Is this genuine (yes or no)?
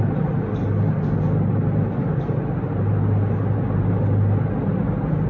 yes